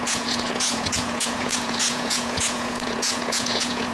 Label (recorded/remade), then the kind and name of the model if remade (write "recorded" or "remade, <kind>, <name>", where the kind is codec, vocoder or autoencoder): remade, vocoder, Vocos